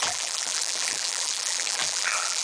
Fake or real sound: fake